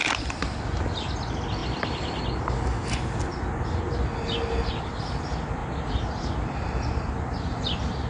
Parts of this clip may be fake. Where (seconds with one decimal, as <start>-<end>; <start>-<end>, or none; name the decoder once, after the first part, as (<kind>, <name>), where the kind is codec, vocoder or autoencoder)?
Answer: 0.0-0.6 (vocoder, BigVGAN v2); 5.6-6.9